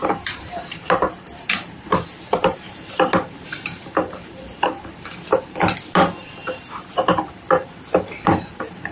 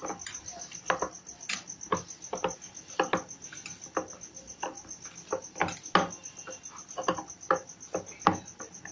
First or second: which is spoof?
first